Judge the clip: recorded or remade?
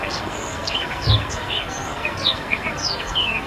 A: remade